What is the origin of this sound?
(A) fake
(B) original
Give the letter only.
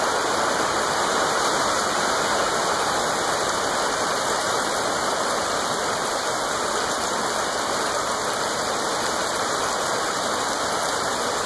A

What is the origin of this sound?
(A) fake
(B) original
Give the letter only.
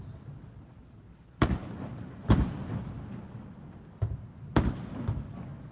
B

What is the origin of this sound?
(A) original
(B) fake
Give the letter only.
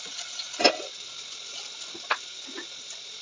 A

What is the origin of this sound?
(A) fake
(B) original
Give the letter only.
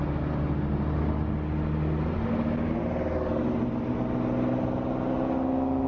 B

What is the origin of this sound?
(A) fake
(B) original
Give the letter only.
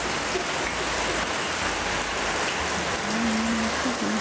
B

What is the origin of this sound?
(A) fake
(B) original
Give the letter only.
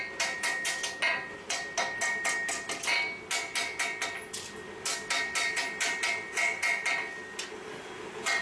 B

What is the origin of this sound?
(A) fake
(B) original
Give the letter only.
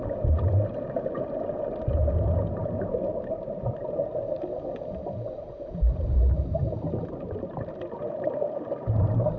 B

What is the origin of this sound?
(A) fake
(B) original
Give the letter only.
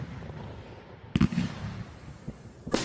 B